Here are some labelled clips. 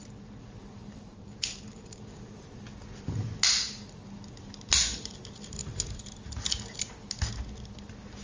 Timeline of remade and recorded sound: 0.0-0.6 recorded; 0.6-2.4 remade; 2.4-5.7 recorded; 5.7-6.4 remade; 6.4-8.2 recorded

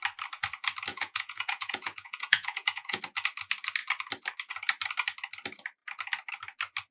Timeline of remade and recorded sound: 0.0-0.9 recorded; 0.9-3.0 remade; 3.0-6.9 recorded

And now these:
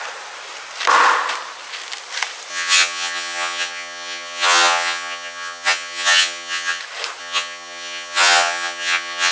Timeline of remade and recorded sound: 0.0-2.5 recorded; 2.5-6.8 remade; 6.8-7.2 recorded; 7.2-9.3 remade

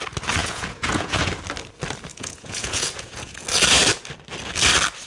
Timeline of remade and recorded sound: 0.0-0.4 recorded; 0.4-1.3 remade; 1.3-2.1 recorded; 2.1-3.4 remade; 3.4-5.1 recorded